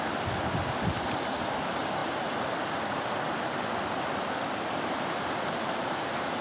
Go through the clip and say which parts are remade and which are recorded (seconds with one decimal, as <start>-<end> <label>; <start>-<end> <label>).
0.0-2.0 remade; 2.0-3.0 recorded; 3.0-6.4 remade